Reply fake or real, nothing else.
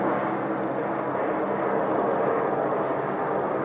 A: real